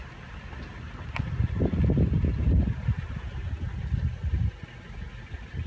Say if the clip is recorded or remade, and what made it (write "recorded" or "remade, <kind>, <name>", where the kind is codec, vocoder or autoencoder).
recorded